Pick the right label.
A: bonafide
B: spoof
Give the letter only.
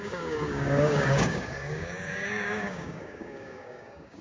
B